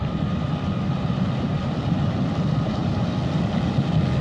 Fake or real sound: fake